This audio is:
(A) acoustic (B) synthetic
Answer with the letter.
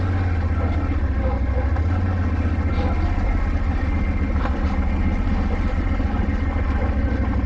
A